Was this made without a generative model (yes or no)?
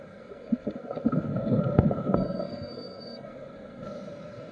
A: no